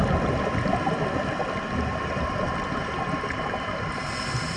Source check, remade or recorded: recorded